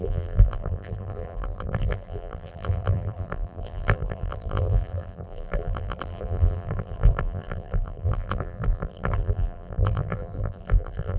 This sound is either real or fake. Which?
fake